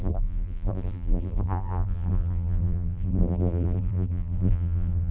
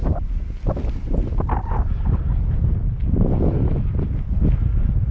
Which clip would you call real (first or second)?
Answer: second